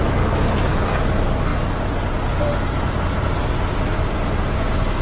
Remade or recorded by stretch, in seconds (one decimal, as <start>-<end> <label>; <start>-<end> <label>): 0.0-5.0 recorded